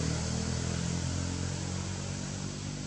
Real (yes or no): yes